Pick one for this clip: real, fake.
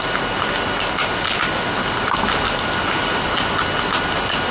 real